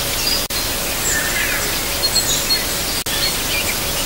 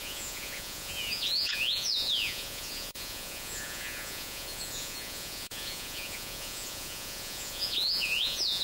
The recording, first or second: first